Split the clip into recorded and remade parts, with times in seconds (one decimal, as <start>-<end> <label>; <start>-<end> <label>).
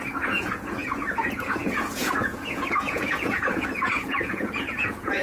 0.0-5.2 remade